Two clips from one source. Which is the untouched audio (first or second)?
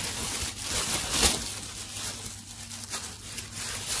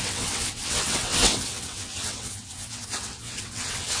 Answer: first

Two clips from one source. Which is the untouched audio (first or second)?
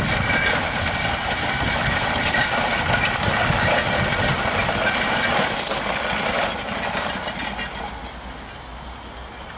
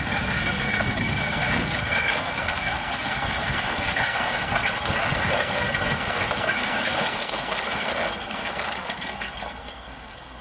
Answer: first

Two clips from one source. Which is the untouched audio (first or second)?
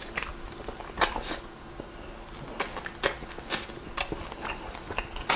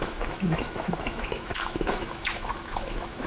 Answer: first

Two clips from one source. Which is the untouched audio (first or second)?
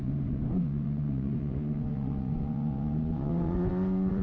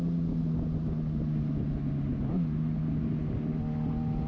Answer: second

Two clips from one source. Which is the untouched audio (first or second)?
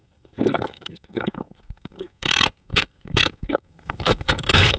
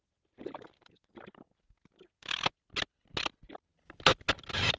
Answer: second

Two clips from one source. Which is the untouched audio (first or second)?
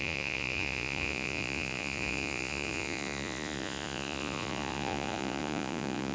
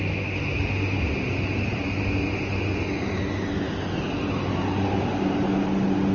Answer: second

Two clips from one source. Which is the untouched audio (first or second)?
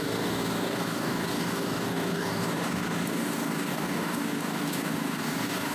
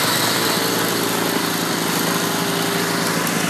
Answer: second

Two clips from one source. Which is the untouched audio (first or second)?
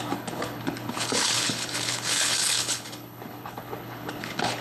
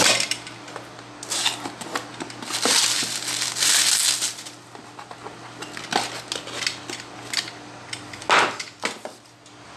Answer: second